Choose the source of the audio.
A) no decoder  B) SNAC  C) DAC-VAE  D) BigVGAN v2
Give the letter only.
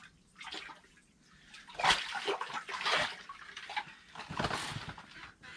A